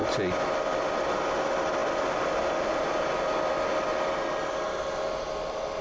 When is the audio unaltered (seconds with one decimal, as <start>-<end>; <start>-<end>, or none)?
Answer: 0.0-5.8